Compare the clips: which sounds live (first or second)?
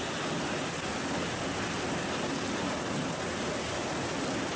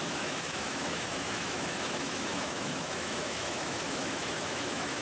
first